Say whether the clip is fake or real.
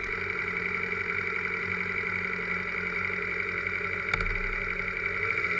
real